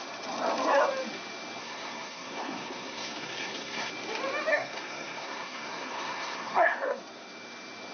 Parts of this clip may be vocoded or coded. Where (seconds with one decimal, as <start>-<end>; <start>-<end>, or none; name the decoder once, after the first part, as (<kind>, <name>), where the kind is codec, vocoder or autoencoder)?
1.6-3.9 (codec, SNAC); 4.5-7.0